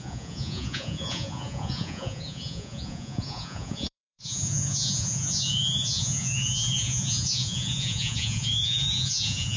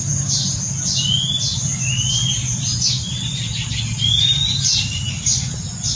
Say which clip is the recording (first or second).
second